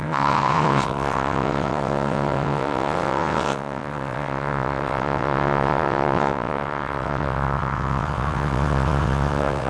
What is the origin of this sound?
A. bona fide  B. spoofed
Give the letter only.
B